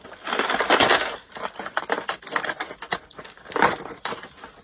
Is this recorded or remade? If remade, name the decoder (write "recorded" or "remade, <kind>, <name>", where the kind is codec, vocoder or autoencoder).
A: recorded